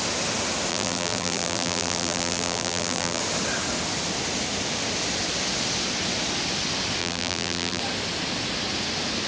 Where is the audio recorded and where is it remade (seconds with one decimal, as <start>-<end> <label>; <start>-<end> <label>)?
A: 0.0-0.7 recorded; 0.7-3.2 remade; 3.2-7.0 recorded; 7.0-7.8 remade; 7.8-9.3 recorded